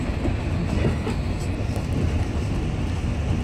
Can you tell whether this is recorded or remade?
recorded